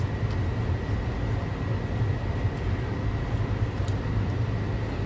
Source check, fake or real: real